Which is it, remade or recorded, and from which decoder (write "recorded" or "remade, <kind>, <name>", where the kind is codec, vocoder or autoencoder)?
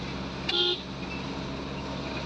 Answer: recorded